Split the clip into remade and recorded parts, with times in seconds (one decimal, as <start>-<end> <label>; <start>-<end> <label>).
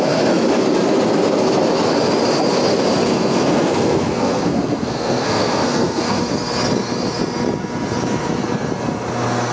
0.0-3.1 recorded; 3.1-6.2 remade; 6.2-9.5 recorded